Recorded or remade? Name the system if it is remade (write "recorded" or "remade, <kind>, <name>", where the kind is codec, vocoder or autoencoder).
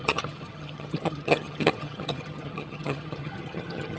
remade, vocoder, HiFi-GAN